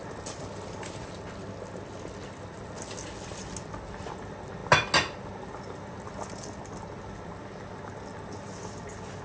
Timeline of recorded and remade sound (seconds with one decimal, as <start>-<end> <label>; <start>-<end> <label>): 0.0-9.2 recorded